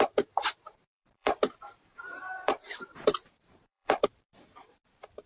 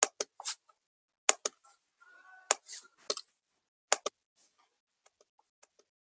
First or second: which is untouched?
second